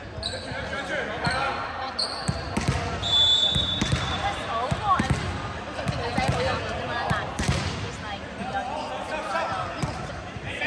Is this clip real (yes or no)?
yes